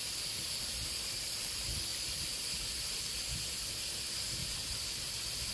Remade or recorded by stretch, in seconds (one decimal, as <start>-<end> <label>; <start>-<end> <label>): 0.0-5.5 recorded

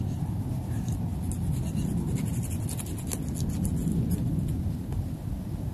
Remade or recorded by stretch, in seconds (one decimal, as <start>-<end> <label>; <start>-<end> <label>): 0.0-1.1 remade; 1.1-4.5 recorded; 4.5-5.7 remade

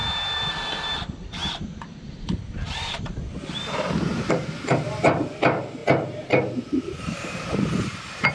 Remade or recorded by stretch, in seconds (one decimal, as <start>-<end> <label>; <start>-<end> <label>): 0.0-0.5 remade; 0.5-1.4 recorded; 1.4-3.0 remade; 3.0-4.1 recorded; 4.1-5.0 remade; 5.0-5.8 recorded; 5.8-8.3 remade

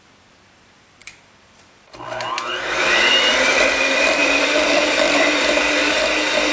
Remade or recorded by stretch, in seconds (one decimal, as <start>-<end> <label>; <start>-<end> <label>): 0.0-6.5 remade

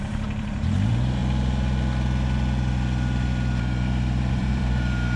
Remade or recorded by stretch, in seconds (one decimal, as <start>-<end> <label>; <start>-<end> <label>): 0.0-1.2 remade; 1.2-4.3 recorded; 4.3-5.2 remade

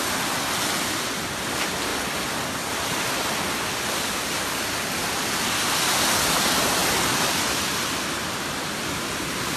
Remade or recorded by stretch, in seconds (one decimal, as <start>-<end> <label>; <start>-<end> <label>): 0.0-9.6 recorded